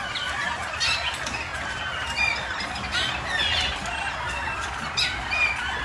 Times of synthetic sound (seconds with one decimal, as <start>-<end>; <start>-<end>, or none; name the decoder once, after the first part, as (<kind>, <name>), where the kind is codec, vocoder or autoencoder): none